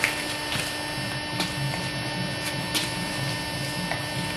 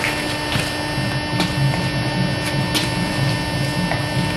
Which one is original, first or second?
second